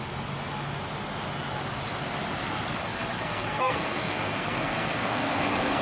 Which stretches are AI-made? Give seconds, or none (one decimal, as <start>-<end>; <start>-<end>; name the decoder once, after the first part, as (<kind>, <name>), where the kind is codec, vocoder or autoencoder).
2.8-5.8 (codec, SNAC)

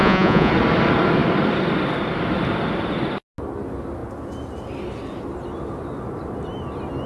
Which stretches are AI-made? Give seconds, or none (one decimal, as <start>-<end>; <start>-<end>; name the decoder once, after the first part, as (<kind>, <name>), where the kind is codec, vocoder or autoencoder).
0.0-0.5 (vocoder, Vocos)

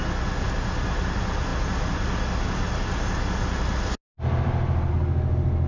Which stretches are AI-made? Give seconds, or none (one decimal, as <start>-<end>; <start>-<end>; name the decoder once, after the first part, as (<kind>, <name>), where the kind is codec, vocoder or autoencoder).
none

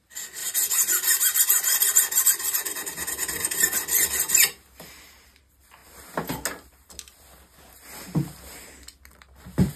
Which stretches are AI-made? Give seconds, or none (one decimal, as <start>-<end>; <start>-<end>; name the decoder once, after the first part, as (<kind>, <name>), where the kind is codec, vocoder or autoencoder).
0.4-1.4 (vocoder, BigVGAN v2)

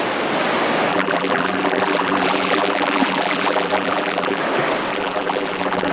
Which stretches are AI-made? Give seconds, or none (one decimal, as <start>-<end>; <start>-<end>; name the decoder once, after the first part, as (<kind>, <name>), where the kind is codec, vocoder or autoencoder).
0.9-4.4 (vocoder, BigVGAN v2); 4.9-5.9

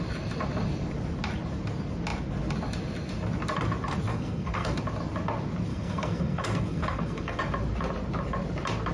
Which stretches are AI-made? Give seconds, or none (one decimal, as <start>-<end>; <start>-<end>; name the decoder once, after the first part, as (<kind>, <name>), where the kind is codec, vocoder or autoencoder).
4.1-4.8 (codec, SNAC); 5.7-7.4

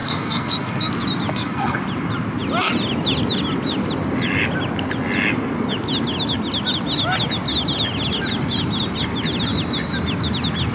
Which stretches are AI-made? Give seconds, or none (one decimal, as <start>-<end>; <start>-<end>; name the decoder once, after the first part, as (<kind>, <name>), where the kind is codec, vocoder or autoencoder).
0.0-0.9 (codec, SNAC); 1.3-1.8

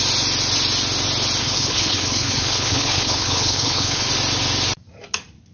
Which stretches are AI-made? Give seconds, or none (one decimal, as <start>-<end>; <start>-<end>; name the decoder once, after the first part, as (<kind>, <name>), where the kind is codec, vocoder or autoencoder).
1.4-4.1 (codec, HILCodec)